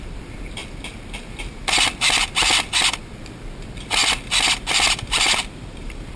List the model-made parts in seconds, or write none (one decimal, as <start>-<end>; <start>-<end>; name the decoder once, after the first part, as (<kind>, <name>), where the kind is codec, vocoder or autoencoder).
0.0-0.6 (vocoder, BigVGAN v2); 1.3-6.2